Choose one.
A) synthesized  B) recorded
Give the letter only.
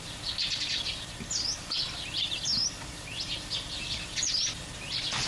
B